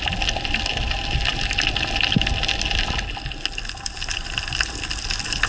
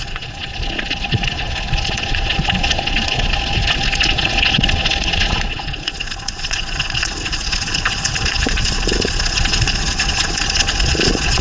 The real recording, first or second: first